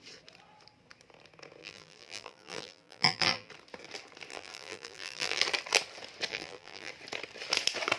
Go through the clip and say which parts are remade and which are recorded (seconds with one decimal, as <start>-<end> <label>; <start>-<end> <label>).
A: 0.0-1.6 recorded; 1.6-3.5 remade; 3.5-4.3 recorded; 4.3-5.4 remade; 5.4-6.3 recorded; 6.3-6.9 remade; 6.9-8.0 recorded